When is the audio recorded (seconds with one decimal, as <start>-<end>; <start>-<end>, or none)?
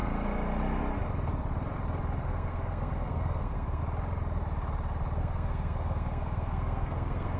0.0-2.2; 3.8-5.2